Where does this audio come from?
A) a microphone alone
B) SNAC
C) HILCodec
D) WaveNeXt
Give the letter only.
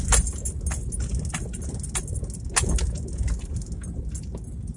A